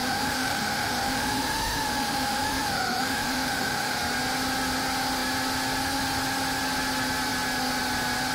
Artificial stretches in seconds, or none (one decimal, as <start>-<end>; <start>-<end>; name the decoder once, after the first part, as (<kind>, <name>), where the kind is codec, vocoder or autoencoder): 0.0-4.0 (autoencoder, DAC-VAE)